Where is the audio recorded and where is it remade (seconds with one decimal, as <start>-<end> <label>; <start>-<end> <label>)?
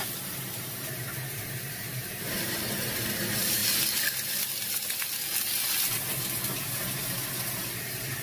0.0-3.6 remade; 3.6-7.3 recorded; 7.3-8.2 remade